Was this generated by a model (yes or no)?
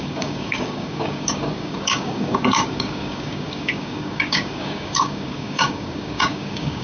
yes